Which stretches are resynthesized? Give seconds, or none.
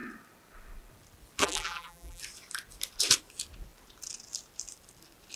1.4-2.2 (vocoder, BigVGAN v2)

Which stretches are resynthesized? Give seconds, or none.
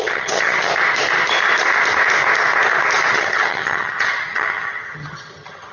0.0-0.7 (vocoder, HiFi-GAN); 3.1-5.7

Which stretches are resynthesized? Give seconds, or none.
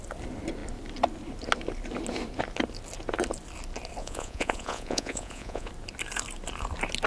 4.0-5.7 (vocoder, Vocos)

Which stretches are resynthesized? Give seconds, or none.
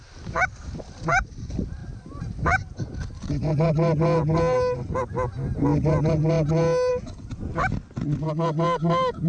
1.8-3.3 (vocoder, BigVGAN v2)